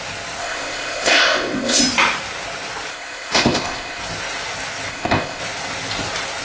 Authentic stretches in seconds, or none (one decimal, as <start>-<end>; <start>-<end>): 0.0-0.4; 1.8-2.9; 4.0-4.9; 5.4-6.4